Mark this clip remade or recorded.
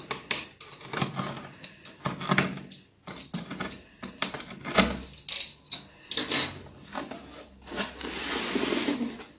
recorded